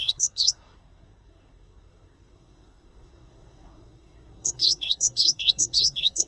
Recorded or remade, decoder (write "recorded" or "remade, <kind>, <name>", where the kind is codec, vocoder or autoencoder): remade, codec, SNAC